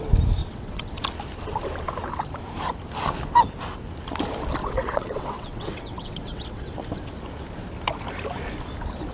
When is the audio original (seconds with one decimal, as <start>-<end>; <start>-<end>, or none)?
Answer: 0.0-0.4; 0.9-4.6; 6.7-9.1